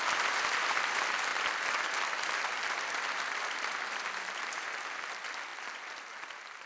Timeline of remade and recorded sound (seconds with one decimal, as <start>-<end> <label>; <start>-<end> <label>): 0.0-6.7 recorded